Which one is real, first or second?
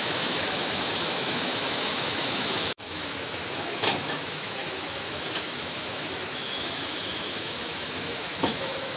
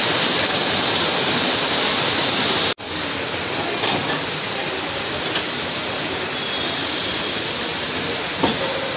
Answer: second